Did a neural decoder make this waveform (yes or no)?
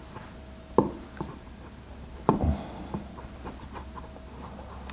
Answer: no